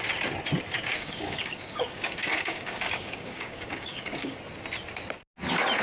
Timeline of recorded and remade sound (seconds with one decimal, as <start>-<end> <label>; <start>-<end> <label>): 0.0-0.9 recorded; 0.9-4.4 remade; 4.4-5.8 recorded